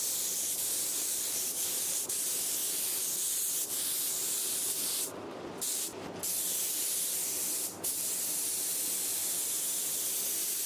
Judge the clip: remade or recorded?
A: recorded